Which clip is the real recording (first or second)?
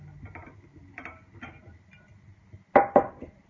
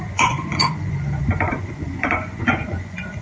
first